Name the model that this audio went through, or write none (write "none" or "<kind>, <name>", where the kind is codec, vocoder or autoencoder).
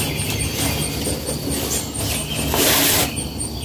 none